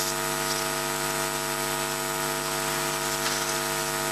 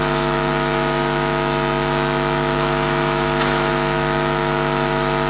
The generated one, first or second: second